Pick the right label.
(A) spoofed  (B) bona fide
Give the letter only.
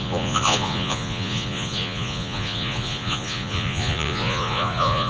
A